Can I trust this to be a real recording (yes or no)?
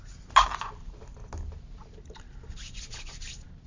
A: yes